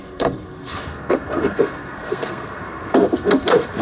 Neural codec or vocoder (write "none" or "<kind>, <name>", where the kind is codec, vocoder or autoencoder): codec, SNAC